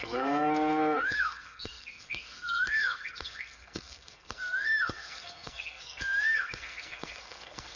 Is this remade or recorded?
remade